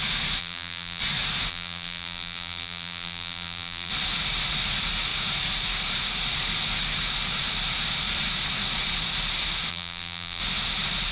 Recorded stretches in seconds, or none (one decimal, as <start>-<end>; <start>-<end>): 0.0-0.4; 1.0-1.5; 3.9-9.7; 10.4-11.1